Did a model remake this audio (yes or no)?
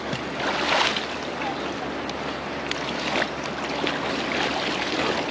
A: no